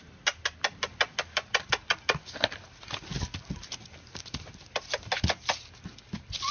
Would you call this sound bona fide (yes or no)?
yes